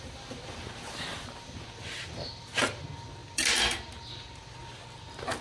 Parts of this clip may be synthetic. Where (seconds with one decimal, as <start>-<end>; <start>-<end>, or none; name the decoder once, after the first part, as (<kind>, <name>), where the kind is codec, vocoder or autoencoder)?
none